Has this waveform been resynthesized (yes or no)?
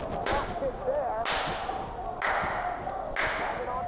no